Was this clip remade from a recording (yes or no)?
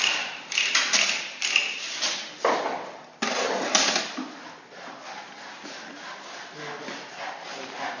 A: no